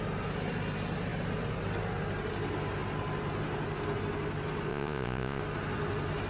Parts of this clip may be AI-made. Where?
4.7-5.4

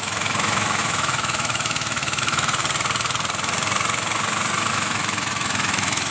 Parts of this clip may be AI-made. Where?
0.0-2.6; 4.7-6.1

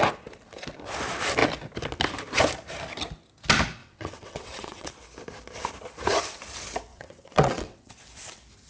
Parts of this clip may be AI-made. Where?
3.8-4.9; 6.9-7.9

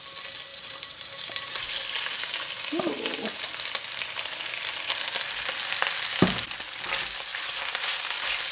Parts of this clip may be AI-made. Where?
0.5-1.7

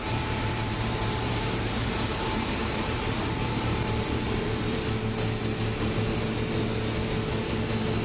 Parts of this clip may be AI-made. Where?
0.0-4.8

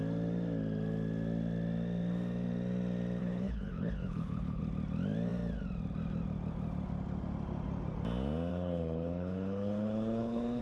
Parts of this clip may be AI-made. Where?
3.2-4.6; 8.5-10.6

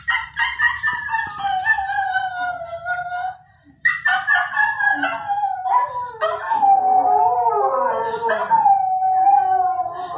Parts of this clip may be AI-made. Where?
0.0-1.5; 6.1-8.4